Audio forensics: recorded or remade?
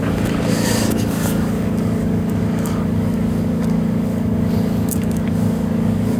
remade